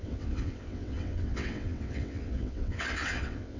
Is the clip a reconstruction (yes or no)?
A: yes